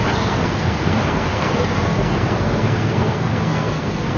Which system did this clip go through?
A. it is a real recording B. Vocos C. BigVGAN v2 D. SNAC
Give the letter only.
D